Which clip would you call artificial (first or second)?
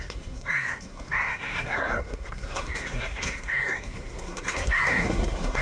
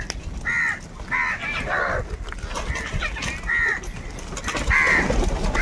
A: first